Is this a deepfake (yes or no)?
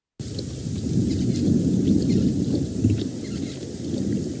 no